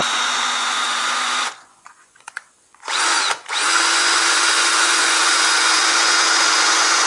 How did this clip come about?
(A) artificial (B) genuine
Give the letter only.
A